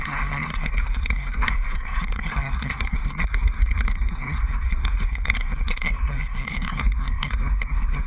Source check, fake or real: fake